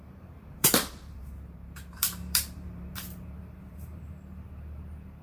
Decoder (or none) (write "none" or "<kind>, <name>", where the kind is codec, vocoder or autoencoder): vocoder, BigVGAN v2